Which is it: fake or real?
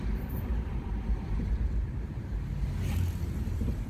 fake